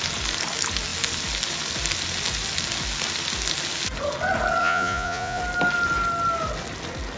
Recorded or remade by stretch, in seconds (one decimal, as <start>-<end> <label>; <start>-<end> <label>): 0.0-4.6 recorded; 4.6-5.4 remade; 5.4-7.2 recorded